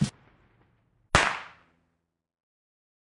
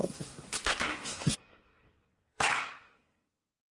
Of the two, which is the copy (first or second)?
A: second